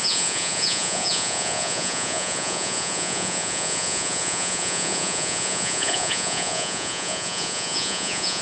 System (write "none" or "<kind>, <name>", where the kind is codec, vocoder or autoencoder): vocoder, Vocos